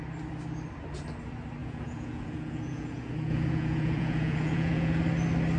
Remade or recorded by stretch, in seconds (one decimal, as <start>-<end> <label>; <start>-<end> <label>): 0.0-1.6 recorded; 1.6-5.0 remade; 5.0-5.6 recorded